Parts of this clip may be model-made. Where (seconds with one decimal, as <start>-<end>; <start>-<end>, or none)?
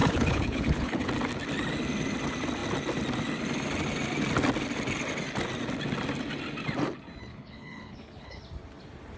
0.0-1.1; 7.3-8.4